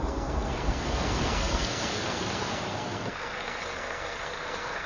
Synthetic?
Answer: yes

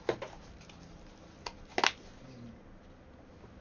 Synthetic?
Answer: no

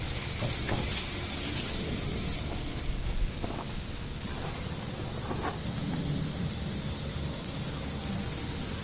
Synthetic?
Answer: no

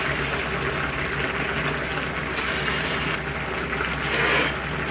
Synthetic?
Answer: no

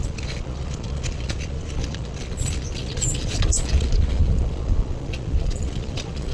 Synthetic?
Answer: yes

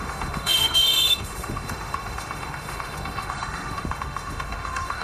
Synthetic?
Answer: yes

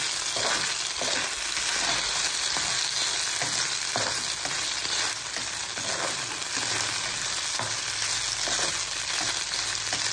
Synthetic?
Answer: no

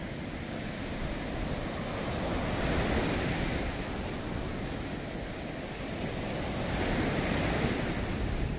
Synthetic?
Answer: no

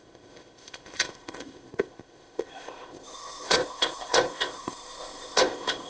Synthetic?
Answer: yes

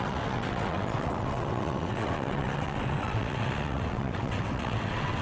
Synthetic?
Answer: yes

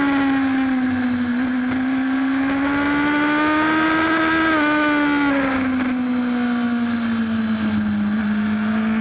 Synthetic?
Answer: no